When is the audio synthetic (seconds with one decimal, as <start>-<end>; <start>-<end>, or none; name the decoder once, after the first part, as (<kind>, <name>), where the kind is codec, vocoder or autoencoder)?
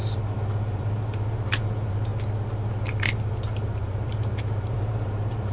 0.0-2.1 (vocoder, BigVGAN v2); 2.7-5.5